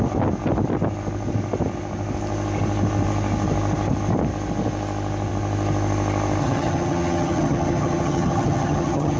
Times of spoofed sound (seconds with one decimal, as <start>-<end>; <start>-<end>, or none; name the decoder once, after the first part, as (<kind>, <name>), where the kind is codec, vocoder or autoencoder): 6.4-9.2 (vocoder, HiFi-GAN)